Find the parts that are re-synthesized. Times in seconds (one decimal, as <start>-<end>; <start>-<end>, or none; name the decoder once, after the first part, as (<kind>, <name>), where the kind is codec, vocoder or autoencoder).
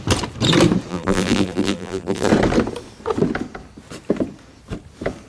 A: 0.9-2.3 (vocoder, BigVGAN v2)